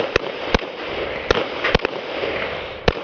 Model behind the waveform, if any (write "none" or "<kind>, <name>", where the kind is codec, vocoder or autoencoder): none